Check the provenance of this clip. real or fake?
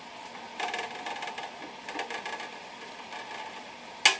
real